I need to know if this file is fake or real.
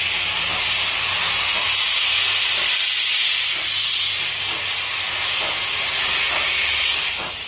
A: real